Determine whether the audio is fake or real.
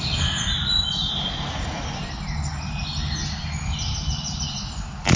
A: real